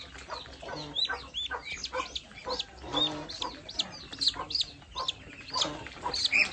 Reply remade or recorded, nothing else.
recorded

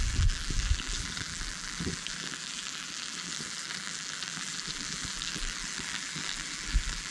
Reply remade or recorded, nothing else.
remade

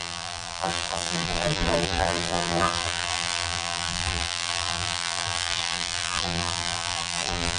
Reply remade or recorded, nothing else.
remade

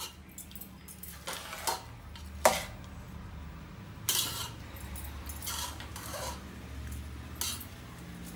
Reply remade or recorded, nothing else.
recorded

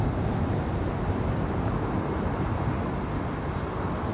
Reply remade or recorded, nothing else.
recorded